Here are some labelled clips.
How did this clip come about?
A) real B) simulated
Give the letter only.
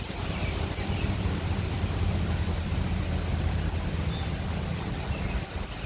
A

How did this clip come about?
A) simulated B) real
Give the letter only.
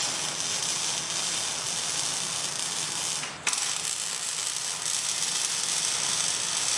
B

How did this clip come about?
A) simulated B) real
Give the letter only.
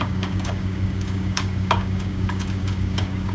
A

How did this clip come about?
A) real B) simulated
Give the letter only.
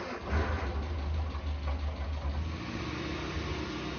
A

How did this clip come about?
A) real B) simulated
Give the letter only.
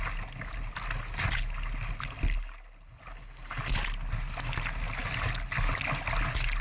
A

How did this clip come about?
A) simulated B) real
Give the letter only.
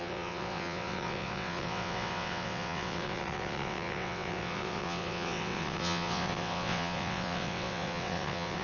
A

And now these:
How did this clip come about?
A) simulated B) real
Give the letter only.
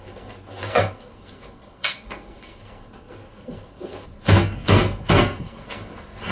A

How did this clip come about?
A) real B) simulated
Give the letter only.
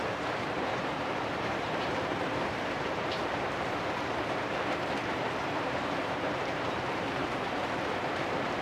B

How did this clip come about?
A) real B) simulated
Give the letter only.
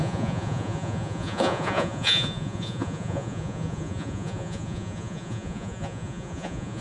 B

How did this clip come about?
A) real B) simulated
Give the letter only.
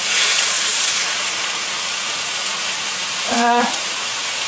B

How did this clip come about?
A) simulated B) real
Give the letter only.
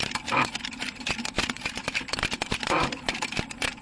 B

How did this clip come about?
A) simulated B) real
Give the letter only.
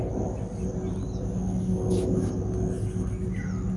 B